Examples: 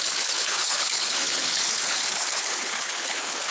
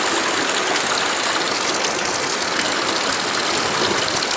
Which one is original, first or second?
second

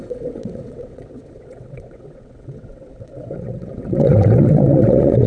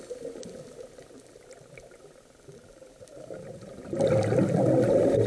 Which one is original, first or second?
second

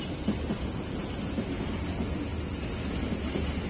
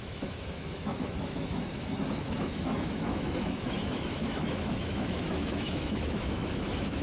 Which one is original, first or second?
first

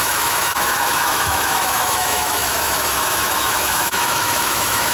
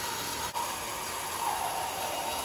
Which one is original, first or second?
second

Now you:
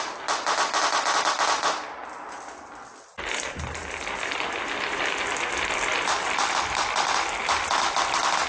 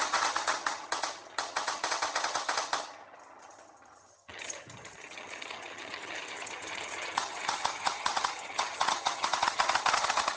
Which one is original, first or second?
first